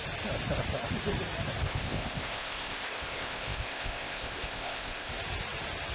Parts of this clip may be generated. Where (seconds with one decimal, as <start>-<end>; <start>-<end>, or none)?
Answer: 1.6-5.1